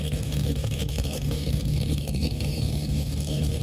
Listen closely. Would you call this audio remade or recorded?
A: remade